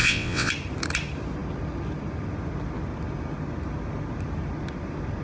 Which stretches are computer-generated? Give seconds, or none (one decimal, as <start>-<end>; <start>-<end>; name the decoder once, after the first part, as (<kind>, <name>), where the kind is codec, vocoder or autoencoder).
0.0-0.5 (vocoder, WaveNeXt)